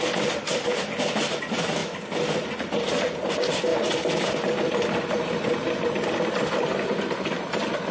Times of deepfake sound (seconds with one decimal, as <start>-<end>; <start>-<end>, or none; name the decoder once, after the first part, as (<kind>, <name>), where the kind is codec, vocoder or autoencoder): none